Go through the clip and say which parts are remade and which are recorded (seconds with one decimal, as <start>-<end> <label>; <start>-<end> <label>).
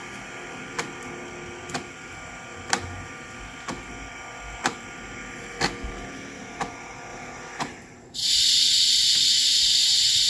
0.0-7.1 recorded; 7.1-8.5 remade; 8.5-10.3 recorded